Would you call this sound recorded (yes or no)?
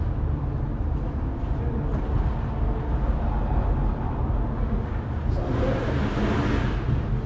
yes